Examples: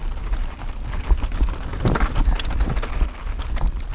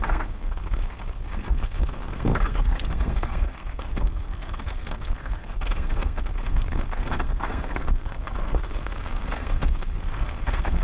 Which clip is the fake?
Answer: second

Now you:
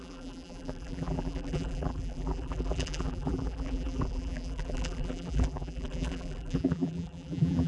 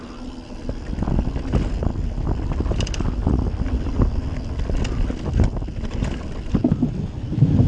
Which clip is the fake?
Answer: first